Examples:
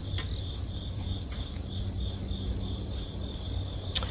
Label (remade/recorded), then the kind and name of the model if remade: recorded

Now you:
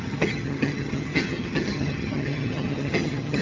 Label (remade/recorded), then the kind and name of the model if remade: remade, vocoder, HiFi-GAN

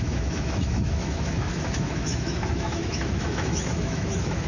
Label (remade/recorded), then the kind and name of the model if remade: remade, autoencoder, DAC-VAE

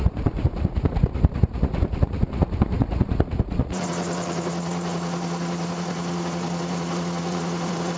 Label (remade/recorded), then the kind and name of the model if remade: remade, vocoder, Vocos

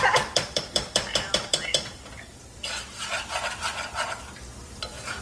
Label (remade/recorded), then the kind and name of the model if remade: remade, vocoder, BigVGAN v2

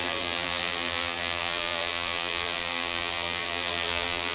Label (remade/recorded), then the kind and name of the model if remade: remade, vocoder, BigVGAN v2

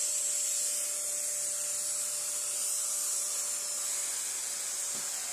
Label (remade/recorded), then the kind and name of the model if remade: recorded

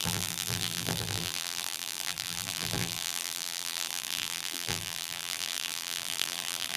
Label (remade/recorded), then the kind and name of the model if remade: remade, vocoder, BigVGAN v2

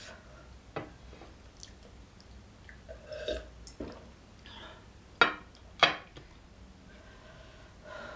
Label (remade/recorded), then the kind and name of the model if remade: recorded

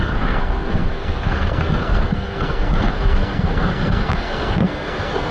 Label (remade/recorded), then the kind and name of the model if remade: remade, codec, SNAC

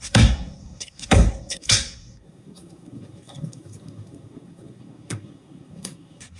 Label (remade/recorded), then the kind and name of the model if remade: remade, codec, SNAC